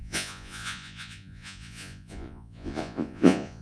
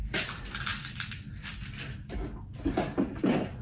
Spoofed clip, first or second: first